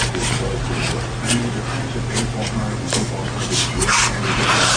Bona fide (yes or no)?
yes